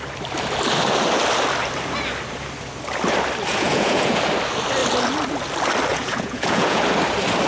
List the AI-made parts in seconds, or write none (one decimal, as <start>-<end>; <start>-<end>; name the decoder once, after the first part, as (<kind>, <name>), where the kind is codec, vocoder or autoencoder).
3.5-4.2 (vocoder, Vocos); 5.9-6.8